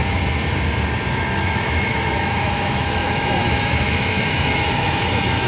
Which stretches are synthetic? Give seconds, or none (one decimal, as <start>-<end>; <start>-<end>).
1.1-5.5